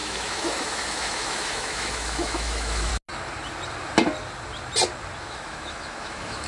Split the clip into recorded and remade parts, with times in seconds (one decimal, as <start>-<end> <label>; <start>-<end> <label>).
0.0-2.9 remade; 2.9-5.2 recorded; 5.2-6.5 remade